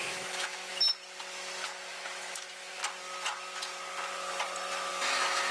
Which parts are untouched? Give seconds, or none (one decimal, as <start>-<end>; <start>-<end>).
0.7-1.9; 2.8-4.9

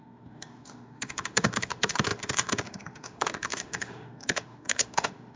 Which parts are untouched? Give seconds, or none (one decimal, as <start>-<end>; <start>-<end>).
none

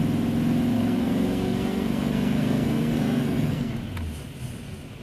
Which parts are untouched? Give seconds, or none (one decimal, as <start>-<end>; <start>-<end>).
0.0-0.7; 3.7-5.0

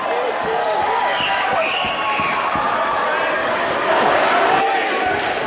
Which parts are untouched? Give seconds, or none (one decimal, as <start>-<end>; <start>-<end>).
0.0-0.6; 1.5-3.4; 4.2-5.5